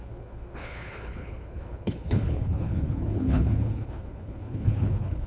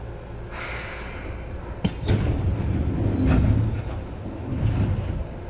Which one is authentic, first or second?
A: second